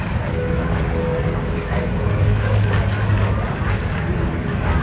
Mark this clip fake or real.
fake